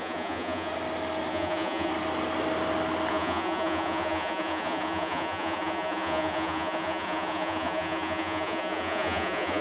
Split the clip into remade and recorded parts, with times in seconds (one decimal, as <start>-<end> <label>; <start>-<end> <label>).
0.0-0.7 remade; 0.7-1.3 recorded; 1.3-1.9 remade; 1.9-3.1 recorded; 3.1-9.6 remade